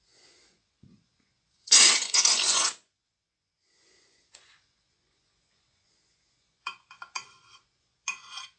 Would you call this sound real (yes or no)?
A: no